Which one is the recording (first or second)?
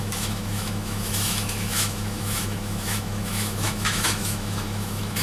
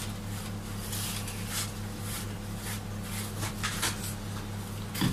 second